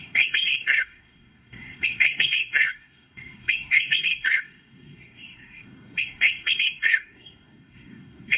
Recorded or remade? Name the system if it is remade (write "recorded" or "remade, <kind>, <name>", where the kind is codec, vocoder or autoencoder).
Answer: remade, codec, SNAC